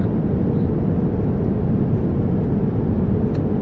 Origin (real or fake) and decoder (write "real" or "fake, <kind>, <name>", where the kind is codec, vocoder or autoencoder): real